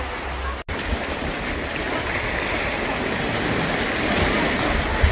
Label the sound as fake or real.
real